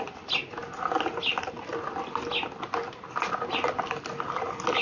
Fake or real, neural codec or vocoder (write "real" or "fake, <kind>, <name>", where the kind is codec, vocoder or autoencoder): real